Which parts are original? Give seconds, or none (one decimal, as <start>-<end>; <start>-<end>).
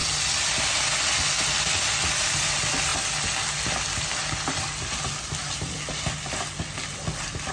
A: 0.0-7.5